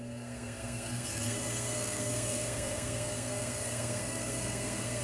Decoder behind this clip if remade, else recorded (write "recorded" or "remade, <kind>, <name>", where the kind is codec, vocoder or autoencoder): remade, codec, SNAC